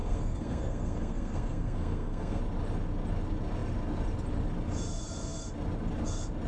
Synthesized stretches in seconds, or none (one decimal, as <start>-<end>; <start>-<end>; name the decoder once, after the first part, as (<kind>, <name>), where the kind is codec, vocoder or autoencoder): 0.0-2.4 (codec, SNAC)